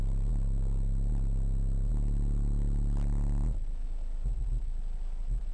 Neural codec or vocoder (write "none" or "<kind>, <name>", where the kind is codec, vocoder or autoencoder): none